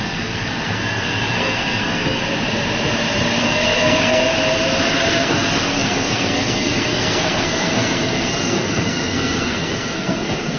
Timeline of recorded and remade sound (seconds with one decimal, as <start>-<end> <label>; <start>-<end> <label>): 0.0-2.2 remade; 2.2-3.4 recorded; 3.4-4.3 remade; 4.3-5.1 recorded; 5.1-10.6 remade